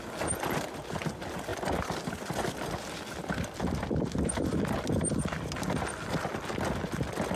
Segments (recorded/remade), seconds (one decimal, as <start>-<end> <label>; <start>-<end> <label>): 0.0-7.4 recorded